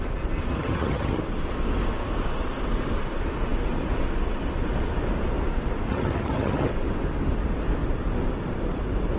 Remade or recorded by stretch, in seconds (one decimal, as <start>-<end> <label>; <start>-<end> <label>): 0.0-0.5 recorded; 0.5-1.2 remade; 1.2-5.9 recorded; 5.9-6.7 remade; 6.7-9.2 recorded